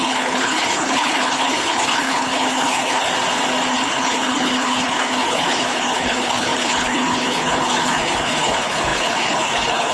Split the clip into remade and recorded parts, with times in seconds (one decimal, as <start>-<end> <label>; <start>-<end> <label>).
0.0-3.1 remade; 3.1-3.7 recorded; 3.7-9.9 remade